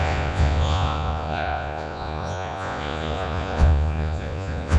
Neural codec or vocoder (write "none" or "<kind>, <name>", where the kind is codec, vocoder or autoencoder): vocoder, Vocos